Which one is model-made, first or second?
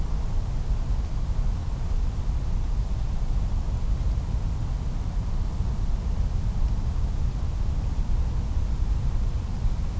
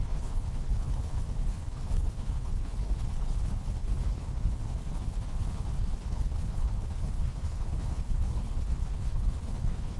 second